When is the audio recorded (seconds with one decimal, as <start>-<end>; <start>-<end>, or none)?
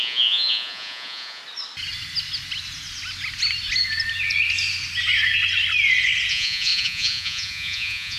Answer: 1.4-6.3